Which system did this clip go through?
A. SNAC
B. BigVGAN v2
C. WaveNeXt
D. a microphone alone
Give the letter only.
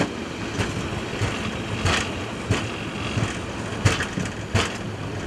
D